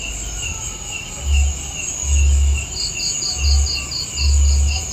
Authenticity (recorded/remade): recorded